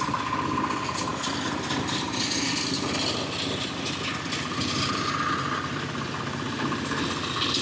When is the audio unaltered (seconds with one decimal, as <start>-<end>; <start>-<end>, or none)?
0.0-7.6